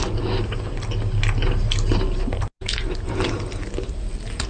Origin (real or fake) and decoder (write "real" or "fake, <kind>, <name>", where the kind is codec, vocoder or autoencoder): real